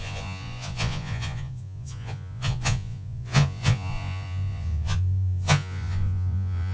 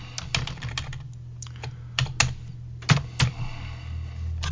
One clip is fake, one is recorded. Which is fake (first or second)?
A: first